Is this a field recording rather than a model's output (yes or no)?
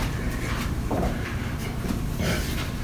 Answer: no